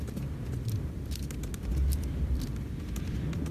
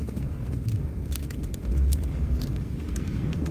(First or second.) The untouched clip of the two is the first